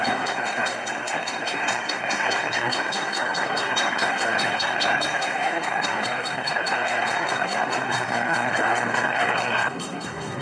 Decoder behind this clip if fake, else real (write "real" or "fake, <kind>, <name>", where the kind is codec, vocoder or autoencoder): fake, codec, SNAC